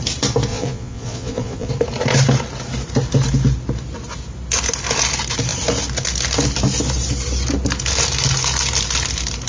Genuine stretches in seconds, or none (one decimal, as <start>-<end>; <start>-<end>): 0.0-0.5; 1.7-9.5